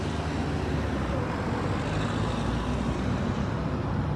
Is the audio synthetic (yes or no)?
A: no